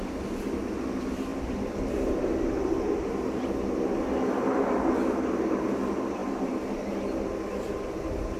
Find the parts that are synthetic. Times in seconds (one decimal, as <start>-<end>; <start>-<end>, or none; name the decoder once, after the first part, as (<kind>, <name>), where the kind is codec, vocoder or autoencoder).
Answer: 6.2-6.9 (vocoder, BigVGAN v2)